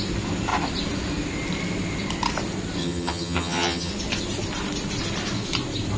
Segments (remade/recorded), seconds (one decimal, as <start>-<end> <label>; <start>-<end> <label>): 0.0-2.8 recorded; 2.8-3.9 remade; 3.9-6.0 recorded